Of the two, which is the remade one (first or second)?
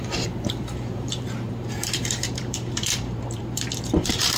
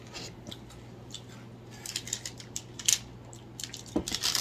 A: first